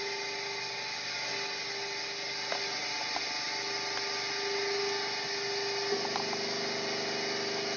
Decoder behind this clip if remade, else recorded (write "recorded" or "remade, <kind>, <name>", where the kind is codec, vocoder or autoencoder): recorded